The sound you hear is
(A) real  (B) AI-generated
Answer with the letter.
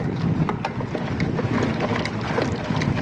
B